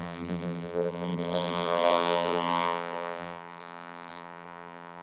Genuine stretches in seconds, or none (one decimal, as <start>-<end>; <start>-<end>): none